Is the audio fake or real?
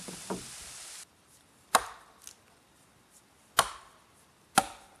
real